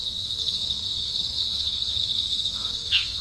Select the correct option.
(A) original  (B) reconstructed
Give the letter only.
B